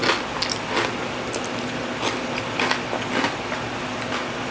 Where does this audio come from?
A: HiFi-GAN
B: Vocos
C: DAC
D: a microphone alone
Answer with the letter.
D